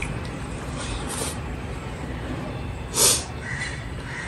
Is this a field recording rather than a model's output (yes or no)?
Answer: no